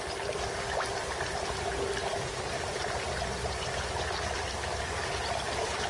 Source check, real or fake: real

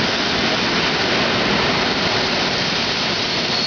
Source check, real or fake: real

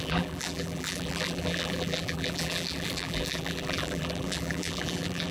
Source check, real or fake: fake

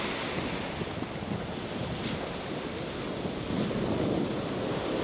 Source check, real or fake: real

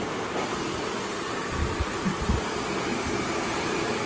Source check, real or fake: real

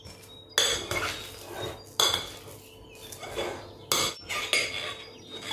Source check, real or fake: real